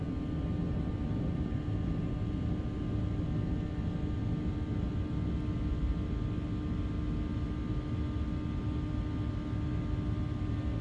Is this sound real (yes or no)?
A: yes